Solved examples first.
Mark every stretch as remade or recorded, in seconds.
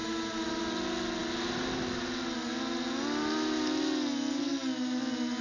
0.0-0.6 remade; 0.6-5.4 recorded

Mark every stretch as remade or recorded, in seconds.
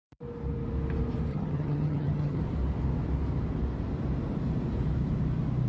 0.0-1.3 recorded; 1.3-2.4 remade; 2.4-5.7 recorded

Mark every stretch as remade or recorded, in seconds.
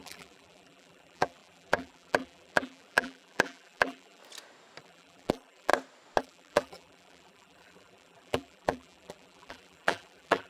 0.0-4.2 remade; 4.2-4.8 recorded; 4.8-5.7 remade; 5.7-6.2 recorded; 6.2-10.5 remade